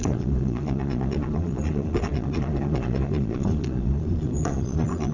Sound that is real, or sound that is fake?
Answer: fake